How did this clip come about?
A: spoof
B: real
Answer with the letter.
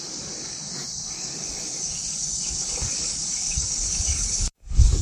A